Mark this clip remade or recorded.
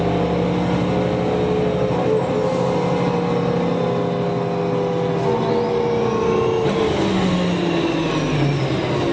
recorded